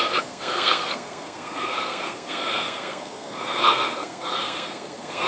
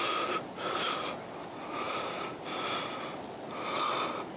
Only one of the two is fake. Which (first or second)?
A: first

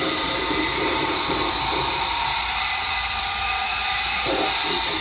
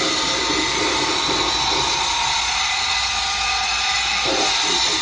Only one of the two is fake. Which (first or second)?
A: first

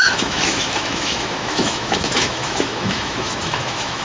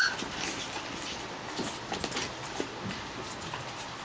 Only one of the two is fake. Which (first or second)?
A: first